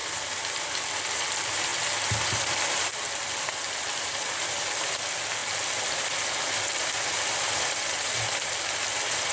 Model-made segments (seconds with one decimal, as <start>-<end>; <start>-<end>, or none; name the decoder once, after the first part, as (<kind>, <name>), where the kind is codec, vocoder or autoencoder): none